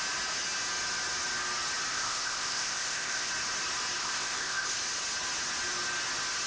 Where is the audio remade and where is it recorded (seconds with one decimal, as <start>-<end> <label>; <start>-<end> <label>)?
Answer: 0.0-1.9 recorded; 1.9-3.3 remade; 3.3-4.0 recorded; 4.0-4.8 remade; 4.8-6.5 recorded